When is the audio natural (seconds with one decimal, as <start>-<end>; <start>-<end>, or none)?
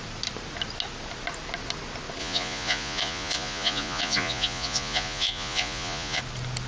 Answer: 0.0-2.2; 6.2-6.7